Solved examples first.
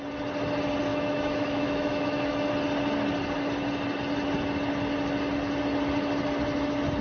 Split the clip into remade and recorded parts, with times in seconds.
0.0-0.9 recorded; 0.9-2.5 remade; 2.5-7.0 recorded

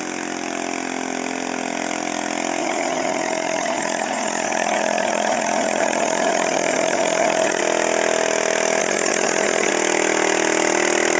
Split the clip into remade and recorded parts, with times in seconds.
0.0-2.6 recorded; 2.6-7.6 remade; 7.6-8.8 recorded; 8.8-9.7 remade; 9.7-11.2 recorded

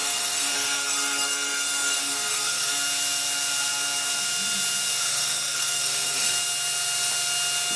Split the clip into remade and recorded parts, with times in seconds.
0.0-2.7 remade; 2.7-5.1 recorded; 5.1-6.3 remade; 6.3-7.8 recorded

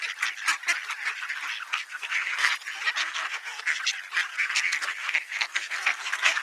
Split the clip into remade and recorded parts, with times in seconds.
0.0-1.7 recorded; 1.7-2.5 remade; 2.5-3.0 recorded; 3.0-3.8 remade; 3.8-4.3 recorded; 4.3-6.4 remade

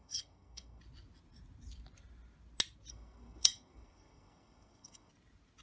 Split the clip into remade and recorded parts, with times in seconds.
0.0-0.8 remade; 0.8-2.9 recorded; 2.9-5.1 remade; 5.1-5.6 recorded

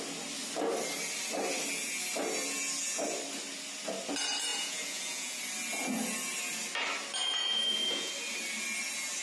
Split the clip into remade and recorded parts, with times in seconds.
0.0-4.5 recorded; 4.5-5.4 remade; 5.4-7.2 recorded; 7.2-8.1 remade; 8.1-9.2 recorded

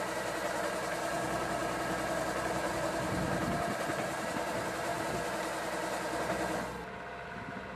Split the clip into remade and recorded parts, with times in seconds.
0.0-3.4 remade; 3.4-3.9 recorded; 3.9-4.9 remade; 4.9-7.8 recorded

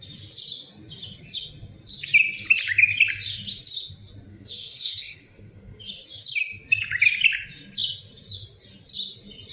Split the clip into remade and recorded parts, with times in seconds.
0.0-4.3 recorded; 4.3-5.8 remade; 5.8-9.5 recorded